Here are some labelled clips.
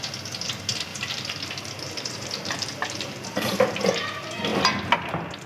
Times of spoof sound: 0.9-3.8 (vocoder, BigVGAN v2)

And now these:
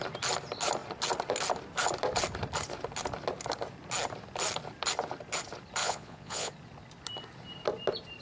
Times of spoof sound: 5.8-6.5 (vocoder, Vocos)